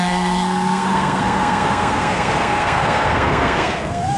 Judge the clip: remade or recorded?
remade